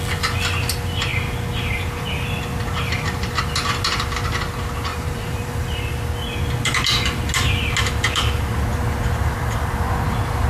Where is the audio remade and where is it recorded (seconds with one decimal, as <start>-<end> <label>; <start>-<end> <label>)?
0.0-4.9 recorded; 4.9-5.8 remade; 5.8-10.5 recorded